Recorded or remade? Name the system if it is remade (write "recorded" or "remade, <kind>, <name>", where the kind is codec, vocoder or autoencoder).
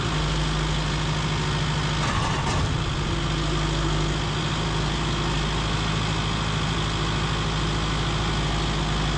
recorded